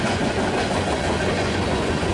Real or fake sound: fake